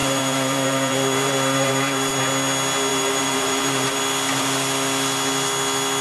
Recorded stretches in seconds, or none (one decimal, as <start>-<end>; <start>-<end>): 2.1-2.9; 4.0-6.0